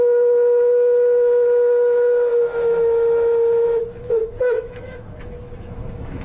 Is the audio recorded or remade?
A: remade